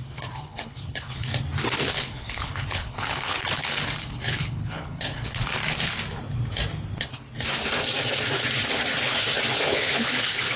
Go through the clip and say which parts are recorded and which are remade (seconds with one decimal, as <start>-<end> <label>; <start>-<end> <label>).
0.0-1.3 remade; 1.3-1.9 recorded; 1.9-5.6 remade; 5.6-9.7 recorded; 9.7-10.6 remade